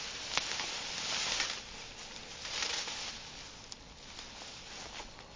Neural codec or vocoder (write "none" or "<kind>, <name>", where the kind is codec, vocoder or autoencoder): none